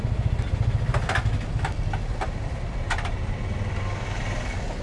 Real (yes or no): yes